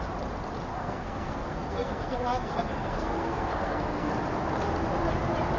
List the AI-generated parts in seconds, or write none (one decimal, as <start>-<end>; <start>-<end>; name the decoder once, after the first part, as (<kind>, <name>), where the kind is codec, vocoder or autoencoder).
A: 0.7-4.1 (codec, SNAC)